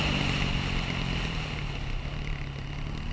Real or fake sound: real